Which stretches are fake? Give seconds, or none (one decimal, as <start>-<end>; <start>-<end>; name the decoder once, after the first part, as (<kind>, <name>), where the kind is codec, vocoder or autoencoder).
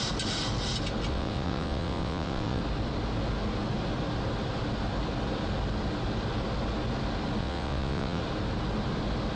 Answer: 1.1-2.6 (vocoder, WaveNeXt); 7.4-8.2